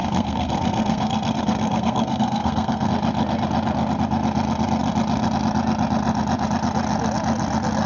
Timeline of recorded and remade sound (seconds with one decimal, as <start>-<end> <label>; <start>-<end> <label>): 0.0-2.9 remade; 2.9-7.9 recorded